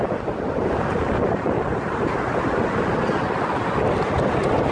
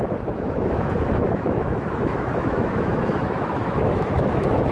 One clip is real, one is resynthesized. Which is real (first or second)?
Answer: first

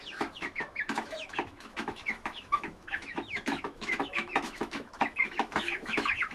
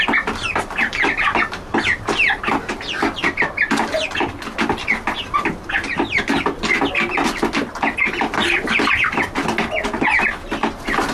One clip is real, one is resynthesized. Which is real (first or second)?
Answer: second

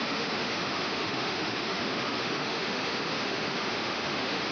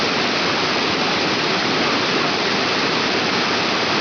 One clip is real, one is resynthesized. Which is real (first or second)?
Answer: second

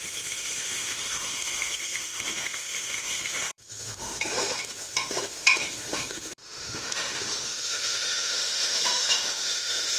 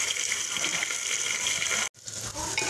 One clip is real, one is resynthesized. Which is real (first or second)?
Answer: second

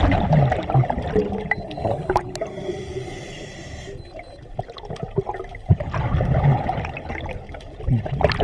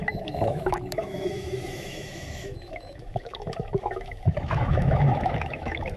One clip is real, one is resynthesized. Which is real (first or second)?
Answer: first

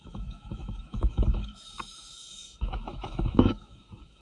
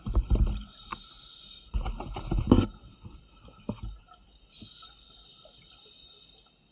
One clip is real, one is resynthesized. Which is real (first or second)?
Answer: second